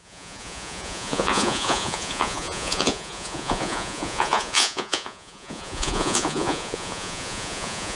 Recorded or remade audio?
remade